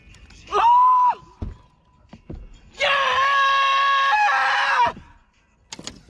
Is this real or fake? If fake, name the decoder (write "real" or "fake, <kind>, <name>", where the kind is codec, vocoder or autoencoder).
real